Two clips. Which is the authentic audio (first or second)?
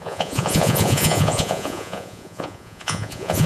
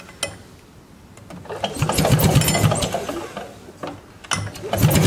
second